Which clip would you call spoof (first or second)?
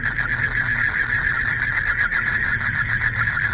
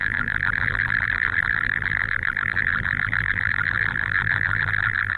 second